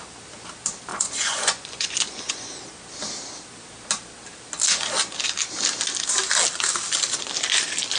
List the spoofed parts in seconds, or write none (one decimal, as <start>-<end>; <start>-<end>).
0.9-2.5